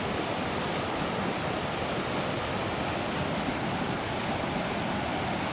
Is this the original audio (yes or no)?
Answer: yes